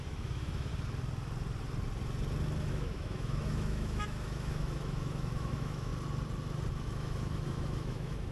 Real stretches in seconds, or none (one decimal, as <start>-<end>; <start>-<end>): 0.7-2.7; 5.9-6.7